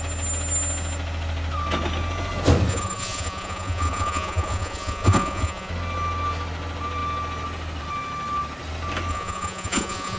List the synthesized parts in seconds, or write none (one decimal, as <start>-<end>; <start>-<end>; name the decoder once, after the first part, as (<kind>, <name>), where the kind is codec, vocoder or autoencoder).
2.7-5.7 (vocoder, Vocos); 9.1-10.2